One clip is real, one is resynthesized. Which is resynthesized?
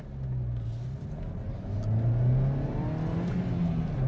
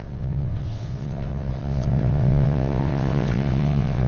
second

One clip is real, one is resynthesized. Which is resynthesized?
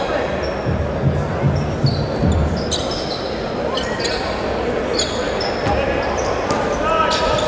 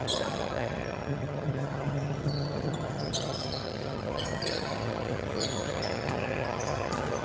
second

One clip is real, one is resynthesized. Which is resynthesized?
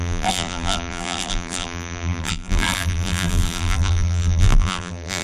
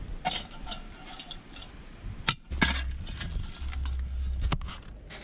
first